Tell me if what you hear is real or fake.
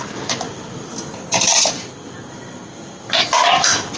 real